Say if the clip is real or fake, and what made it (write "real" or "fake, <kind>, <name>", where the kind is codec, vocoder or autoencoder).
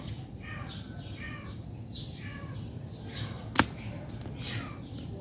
real